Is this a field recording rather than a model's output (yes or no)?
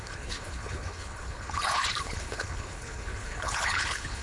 no